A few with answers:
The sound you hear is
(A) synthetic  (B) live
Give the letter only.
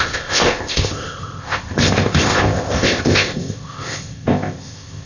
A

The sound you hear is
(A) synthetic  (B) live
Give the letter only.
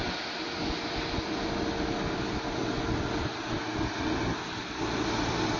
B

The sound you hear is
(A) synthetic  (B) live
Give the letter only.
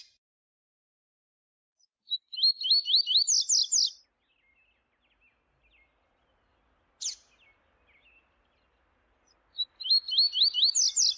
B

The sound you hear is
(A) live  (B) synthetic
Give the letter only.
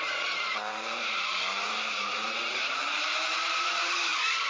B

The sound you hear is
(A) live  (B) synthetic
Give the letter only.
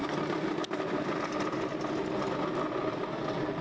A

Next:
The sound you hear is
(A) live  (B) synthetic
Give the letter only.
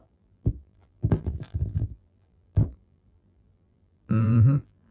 B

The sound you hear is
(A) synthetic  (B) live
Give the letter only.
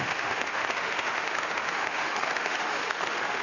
A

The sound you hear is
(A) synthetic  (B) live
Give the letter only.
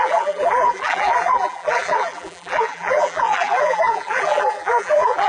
A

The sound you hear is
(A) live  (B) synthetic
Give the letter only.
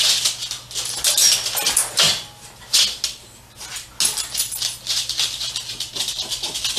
A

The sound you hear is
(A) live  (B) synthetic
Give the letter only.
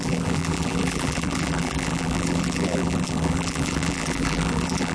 B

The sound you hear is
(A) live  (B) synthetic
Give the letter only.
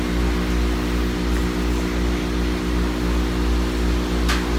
A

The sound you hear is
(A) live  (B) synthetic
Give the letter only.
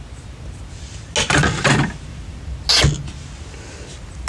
A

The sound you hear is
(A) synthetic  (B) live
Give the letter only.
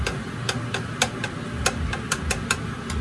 B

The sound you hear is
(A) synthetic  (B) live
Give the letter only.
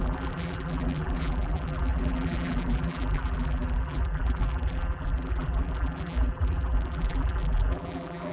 A